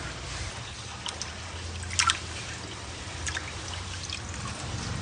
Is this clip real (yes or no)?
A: yes